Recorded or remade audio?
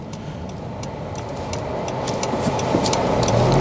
recorded